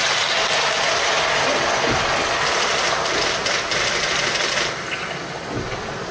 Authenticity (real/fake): real